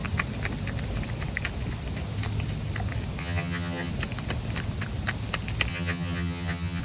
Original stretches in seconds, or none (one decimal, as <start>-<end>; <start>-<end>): 0.0-3.2; 3.9-5.7